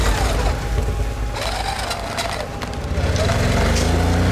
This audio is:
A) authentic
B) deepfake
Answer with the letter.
A